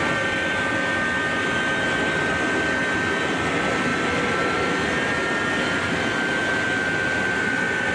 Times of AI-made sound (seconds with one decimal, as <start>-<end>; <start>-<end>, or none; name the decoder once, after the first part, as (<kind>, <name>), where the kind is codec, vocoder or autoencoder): none